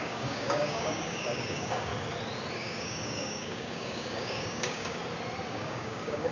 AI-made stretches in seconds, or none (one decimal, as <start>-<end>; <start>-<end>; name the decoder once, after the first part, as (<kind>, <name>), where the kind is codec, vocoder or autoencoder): 0.0-1.9 (codec, DAC); 2.5-5.0; 5.5-6.3